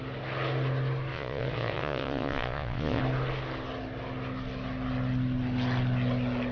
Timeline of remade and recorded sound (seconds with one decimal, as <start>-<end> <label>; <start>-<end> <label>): 0.0-1.1 recorded; 1.1-3.0 remade; 3.0-6.5 recorded